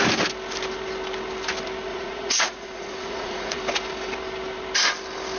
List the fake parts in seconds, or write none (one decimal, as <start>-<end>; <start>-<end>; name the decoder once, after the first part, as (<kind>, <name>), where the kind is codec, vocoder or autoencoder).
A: 1.9-3.6 (vocoder, Vocos)